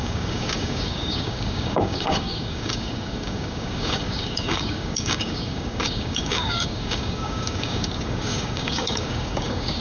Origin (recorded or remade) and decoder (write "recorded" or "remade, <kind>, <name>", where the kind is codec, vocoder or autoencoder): remade, codec, DAC